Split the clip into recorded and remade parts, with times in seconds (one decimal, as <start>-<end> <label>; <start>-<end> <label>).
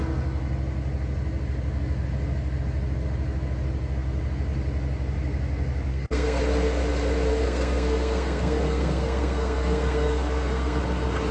0.0-5.9 recorded; 5.9-6.4 remade; 6.4-7.3 recorded; 7.3-10.8 remade; 10.8-11.3 recorded